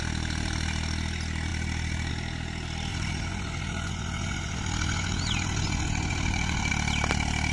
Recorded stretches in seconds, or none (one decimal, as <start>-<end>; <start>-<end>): 0.0-2.9; 6.7-7.5